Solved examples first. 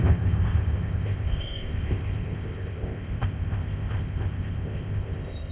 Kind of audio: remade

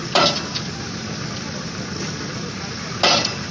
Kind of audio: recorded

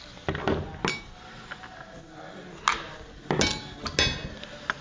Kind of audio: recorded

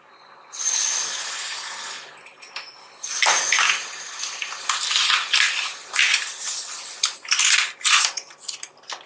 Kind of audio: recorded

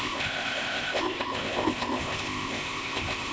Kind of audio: remade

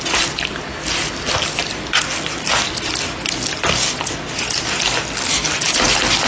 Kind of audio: recorded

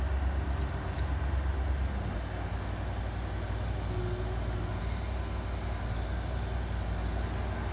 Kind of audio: recorded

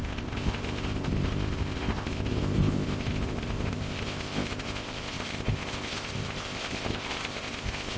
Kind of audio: remade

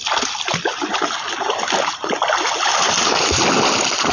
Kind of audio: recorded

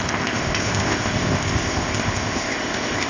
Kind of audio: remade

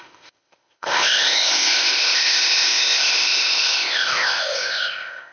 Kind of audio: remade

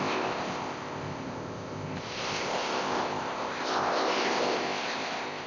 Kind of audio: remade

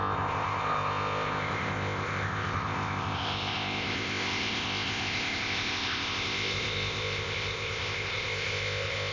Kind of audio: remade